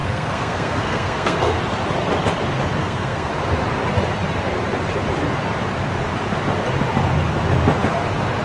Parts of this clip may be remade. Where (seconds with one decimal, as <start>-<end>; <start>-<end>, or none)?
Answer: 0.0-1.6; 2.8-3.3